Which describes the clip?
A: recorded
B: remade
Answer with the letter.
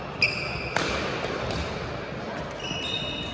A